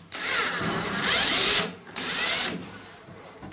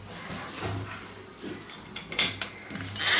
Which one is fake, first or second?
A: first